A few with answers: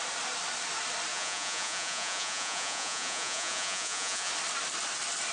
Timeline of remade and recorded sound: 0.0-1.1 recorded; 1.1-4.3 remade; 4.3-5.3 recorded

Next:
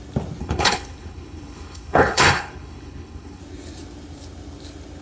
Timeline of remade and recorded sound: 0.0-0.4 recorded; 0.4-3.4 remade; 3.4-5.0 recorded

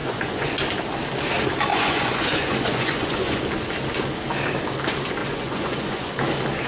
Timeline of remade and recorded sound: 0.0-0.5 remade; 0.5-1.7 recorded; 1.7-3.4 remade; 3.4-5.2 recorded; 5.2-6.1 remade; 6.1-6.7 recorded

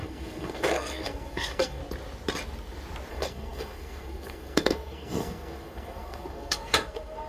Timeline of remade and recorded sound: 0.0-1.8 remade; 1.8-3.1 recorded; 3.1-7.3 remade

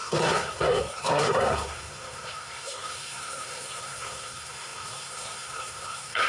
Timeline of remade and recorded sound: 0.0-6.3 remade

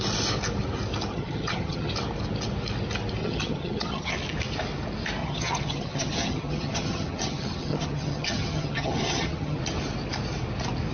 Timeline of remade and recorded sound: 0.0-1.1 recorded; 1.1-1.9 remade; 1.9-3.2 recorded; 3.2-4.1 remade; 4.1-5.2 recorded; 5.2-9.6 remade; 9.6-10.9 recorded

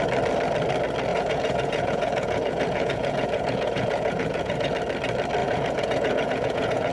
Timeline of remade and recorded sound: 0.0-1.1 recorded; 1.1-4.7 remade; 4.7-5.4 recorded; 5.4-6.9 remade

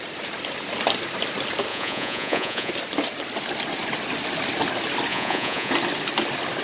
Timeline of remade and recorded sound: 0.0-1.7 recorded; 1.7-2.7 remade; 2.7-5.1 recorded; 5.1-5.7 remade; 5.7-6.6 recorded